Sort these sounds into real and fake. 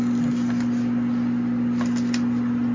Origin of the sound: real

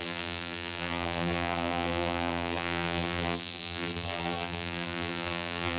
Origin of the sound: fake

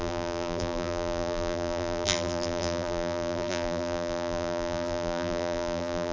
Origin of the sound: fake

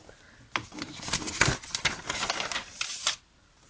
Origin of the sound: real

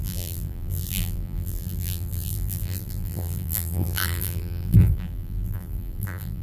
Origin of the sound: fake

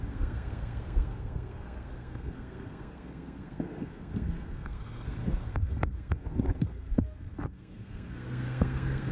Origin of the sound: fake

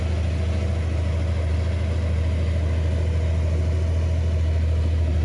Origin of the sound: real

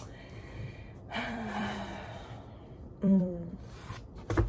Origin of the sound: fake